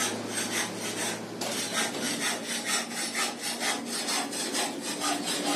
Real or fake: real